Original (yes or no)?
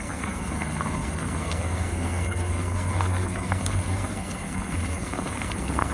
no